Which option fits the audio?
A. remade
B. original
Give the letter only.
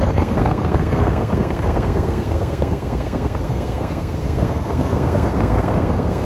A